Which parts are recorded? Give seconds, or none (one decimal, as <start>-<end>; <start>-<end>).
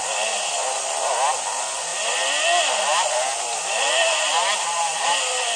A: 0.0-5.6